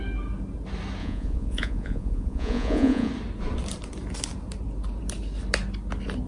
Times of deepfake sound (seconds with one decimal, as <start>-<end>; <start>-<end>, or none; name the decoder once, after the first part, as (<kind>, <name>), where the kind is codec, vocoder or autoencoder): 1.0-3.1 (vocoder, Vocos)